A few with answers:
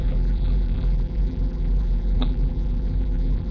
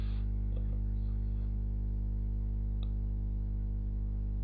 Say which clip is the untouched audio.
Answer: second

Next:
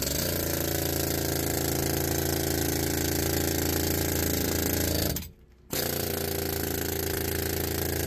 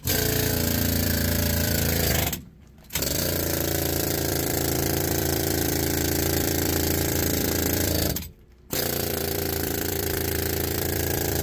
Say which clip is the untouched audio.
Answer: first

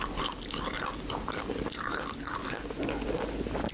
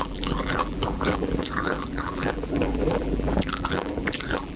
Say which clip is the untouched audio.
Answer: first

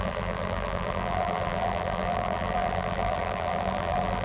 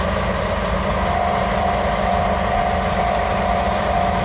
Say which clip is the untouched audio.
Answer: second